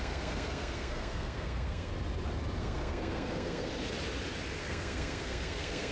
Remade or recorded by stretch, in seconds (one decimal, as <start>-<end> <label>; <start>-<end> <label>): 0.0-1.9 remade; 1.9-2.6 recorded; 2.6-3.7 remade; 3.7-4.6 recorded; 4.6-5.9 remade

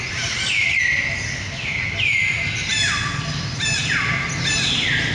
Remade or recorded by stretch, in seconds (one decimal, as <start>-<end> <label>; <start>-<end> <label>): 0.0-5.1 recorded

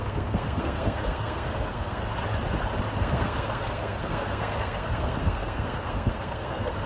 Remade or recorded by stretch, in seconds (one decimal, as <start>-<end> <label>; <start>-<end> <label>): 0.0-2.0 remade; 2.0-3.0 recorded; 3.0-6.9 remade

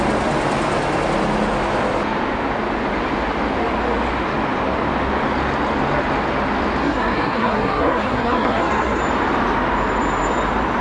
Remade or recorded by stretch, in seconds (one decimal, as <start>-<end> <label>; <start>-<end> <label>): 0.0-6.8 recorded; 6.8-9.0 remade; 9.0-10.8 recorded

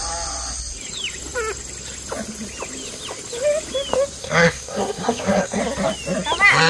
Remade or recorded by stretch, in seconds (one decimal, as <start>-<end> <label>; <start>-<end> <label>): 0.0-4.2 recorded; 4.2-5.6 remade; 5.6-6.7 recorded

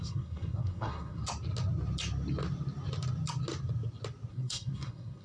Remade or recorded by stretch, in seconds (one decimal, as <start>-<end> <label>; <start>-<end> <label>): 0.0-1.2 remade; 1.2-4.3 recorded; 4.3-5.2 remade

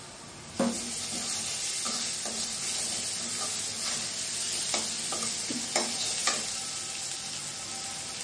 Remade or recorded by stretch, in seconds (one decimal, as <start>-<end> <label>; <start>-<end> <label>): 0.0-8.2 recorded